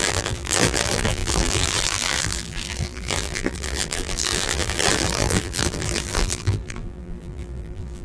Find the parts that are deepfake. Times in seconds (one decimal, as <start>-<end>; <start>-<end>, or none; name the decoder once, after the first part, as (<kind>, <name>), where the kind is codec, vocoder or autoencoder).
0.0-8.0 (vocoder, BigVGAN v2)